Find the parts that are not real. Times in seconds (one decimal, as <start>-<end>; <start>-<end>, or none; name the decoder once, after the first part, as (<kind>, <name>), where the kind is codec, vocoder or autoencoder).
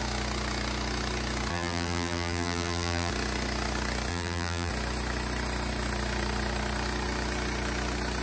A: 1.5-3.1 (vocoder, BigVGAN v2); 4.1-4.7